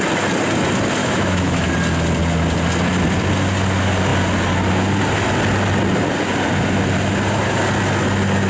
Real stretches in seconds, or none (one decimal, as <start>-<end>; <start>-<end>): 0.0-1.0; 1.7-8.5